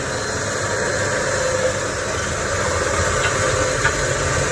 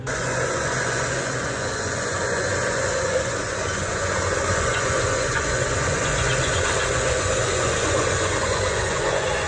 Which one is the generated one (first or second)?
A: second